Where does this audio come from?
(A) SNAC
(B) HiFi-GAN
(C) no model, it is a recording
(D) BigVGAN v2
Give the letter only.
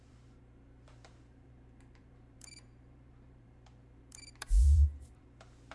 D